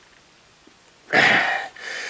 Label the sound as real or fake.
fake